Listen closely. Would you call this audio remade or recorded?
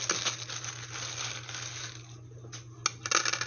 recorded